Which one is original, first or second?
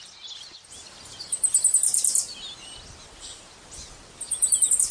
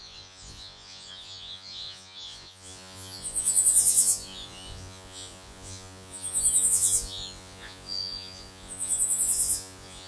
first